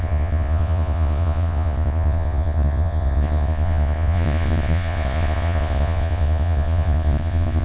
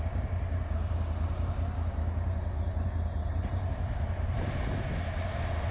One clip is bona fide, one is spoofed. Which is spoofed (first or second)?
first